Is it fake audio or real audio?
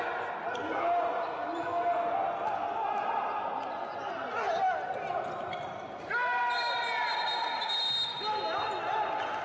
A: real